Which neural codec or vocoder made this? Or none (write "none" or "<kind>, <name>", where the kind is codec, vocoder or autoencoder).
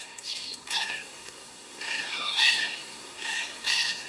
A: codec, SNAC